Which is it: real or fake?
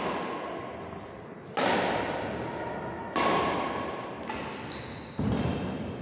real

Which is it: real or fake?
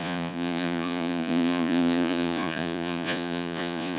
fake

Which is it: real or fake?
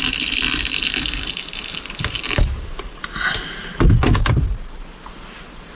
real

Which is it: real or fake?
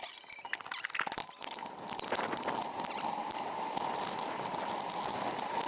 real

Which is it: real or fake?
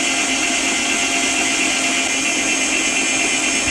real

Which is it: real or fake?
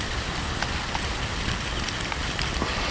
real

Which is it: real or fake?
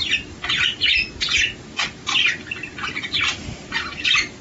real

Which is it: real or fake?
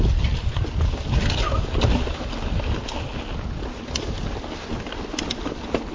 real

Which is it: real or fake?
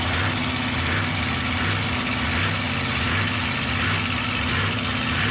real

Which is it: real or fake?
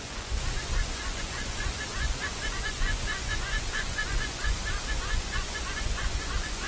fake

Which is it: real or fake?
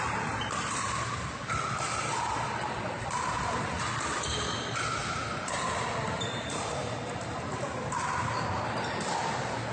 real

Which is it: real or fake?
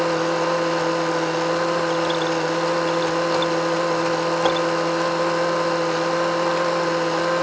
real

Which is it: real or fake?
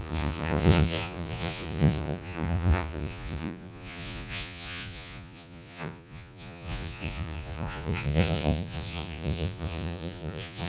fake